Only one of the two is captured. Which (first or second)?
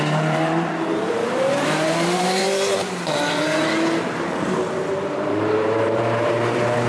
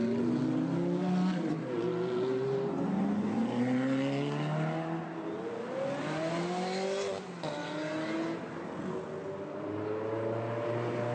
second